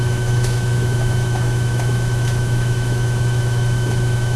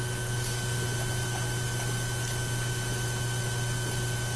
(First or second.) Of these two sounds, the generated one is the first